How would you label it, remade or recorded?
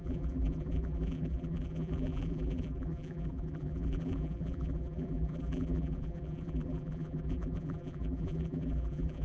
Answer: remade